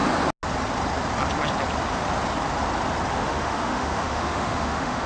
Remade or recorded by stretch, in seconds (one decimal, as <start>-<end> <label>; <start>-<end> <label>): 0.0-3.1 recorded; 3.1-5.1 remade